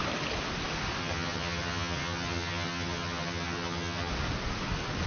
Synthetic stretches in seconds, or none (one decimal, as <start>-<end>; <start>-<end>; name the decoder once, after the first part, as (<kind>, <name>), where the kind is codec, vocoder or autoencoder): 1.0-4.1 (vocoder, HiFi-GAN)